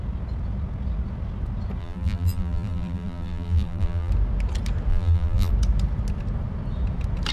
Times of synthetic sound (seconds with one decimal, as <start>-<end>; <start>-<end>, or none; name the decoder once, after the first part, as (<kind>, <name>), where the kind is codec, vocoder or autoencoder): 1.8-4.1 (vocoder, BigVGAN v2); 4.9-5.5